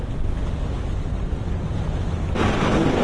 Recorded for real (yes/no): yes